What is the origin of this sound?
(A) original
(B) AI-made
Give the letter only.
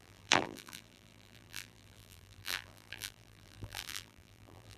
B